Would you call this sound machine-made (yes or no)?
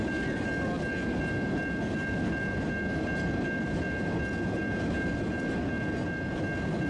no